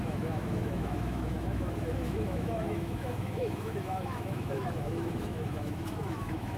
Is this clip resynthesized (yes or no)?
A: yes